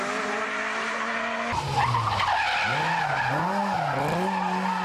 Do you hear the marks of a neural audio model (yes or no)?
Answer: no